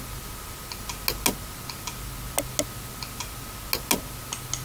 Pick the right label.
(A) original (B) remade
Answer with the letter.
A